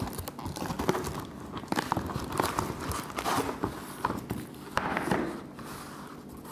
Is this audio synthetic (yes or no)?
no